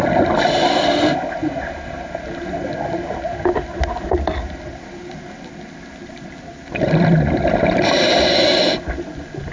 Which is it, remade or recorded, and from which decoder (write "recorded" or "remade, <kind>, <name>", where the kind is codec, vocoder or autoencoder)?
recorded